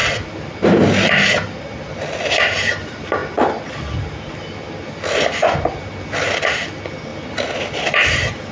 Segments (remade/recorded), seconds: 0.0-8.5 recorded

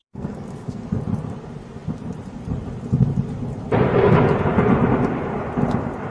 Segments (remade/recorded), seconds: 0.0-0.8 remade; 0.8-6.1 recorded

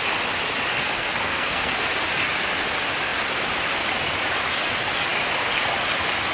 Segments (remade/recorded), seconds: 0.0-0.7 recorded; 0.7-1.8 remade; 1.8-6.3 recorded

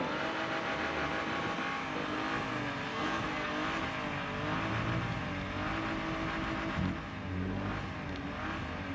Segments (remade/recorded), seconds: 0.0-2.9 recorded; 2.9-3.5 remade; 3.5-8.9 recorded

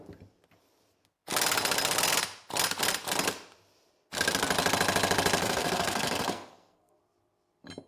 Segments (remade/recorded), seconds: 0.0-5.4 recorded; 5.4-7.0 remade; 7.0-7.9 recorded

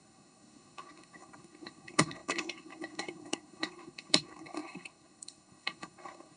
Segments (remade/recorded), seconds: 0.0-6.4 remade